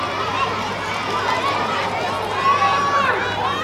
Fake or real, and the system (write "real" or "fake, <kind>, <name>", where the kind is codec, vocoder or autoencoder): real